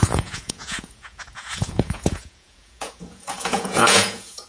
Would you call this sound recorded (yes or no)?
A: no